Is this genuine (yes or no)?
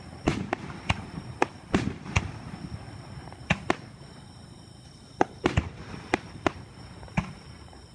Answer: no